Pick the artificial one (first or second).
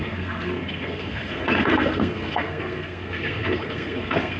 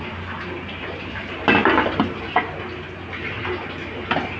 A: first